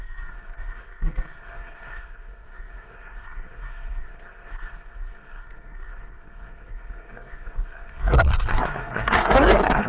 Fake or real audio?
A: fake